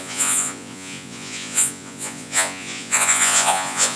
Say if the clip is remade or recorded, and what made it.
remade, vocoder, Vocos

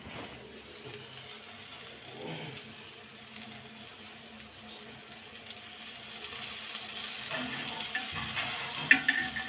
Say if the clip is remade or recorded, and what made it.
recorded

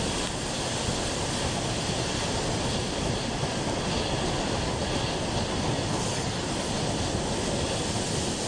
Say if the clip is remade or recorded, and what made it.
recorded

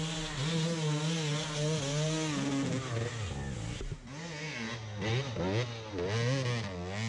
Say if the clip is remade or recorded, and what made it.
recorded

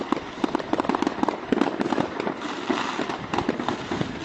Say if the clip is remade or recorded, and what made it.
recorded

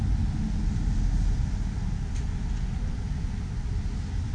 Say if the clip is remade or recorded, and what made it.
recorded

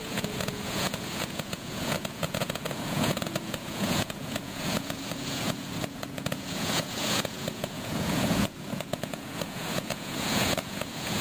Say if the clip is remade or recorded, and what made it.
remade, vocoder, Vocos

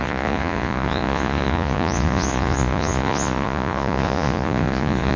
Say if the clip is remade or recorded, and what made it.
remade, vocoder, Vocos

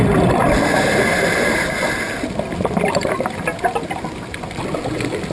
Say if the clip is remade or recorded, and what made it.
recorded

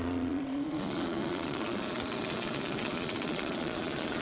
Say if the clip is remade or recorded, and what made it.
remade, vocoder, Vocos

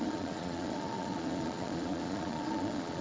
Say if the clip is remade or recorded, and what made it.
remade, vocoder, Vocos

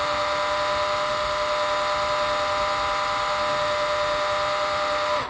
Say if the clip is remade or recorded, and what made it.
recorded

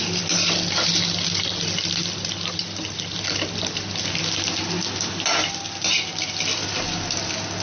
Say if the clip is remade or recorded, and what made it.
recorded